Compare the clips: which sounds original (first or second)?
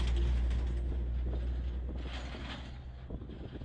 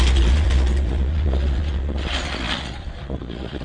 first